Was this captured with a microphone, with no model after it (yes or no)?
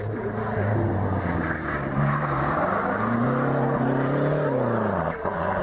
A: yes